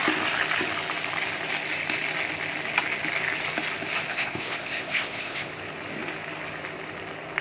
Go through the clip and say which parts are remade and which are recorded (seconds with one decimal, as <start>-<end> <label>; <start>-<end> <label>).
0.0-4.1 recorded; 4.1-5.5 remade; 5.5-7.4 recorded